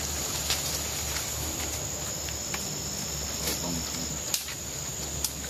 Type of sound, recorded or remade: recorded